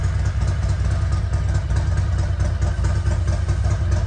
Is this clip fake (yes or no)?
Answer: no